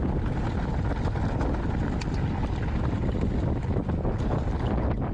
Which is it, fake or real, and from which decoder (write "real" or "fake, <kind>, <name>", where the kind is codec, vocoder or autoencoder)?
real